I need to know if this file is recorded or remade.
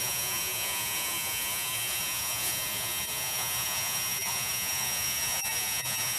remade